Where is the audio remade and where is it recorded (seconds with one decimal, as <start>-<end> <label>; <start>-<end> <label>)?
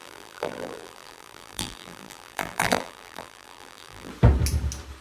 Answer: 0.0-4.1 remade; 4.1-5.0 recorded